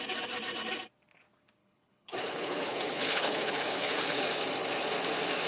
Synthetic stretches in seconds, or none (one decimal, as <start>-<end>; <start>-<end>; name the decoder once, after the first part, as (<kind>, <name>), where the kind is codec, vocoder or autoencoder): 1.6-4.3 (codec, HILCodec)